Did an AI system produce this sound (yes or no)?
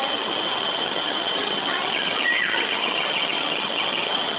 yes